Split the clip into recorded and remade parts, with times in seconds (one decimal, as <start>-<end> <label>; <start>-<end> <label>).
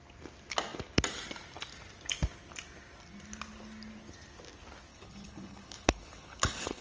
0.0-4.9 recorded; 4.9-6.8 remade